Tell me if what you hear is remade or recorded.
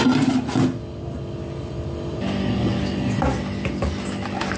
recorded